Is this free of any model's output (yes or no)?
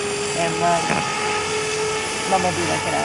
yes